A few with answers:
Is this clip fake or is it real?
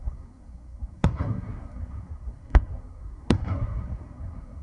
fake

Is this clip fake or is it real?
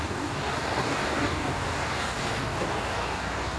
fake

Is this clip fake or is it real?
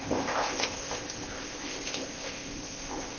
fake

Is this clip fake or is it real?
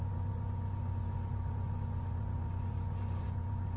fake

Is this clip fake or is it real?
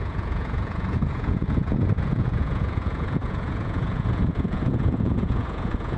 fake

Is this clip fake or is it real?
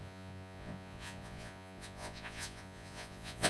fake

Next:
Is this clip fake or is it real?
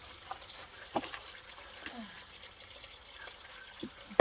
fake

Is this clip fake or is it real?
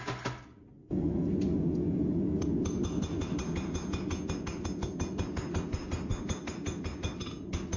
real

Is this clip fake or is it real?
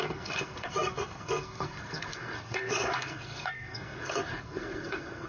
fake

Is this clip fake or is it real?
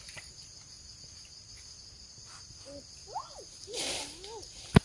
real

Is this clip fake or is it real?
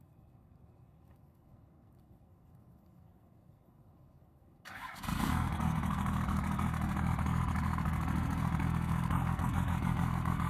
fake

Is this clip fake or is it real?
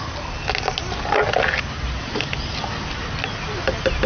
real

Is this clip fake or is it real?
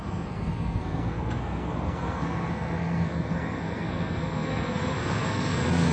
fake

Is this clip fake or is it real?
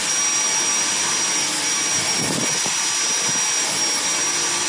real